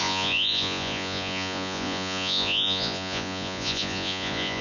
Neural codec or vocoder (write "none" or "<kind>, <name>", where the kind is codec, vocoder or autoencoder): vocoder, Vocos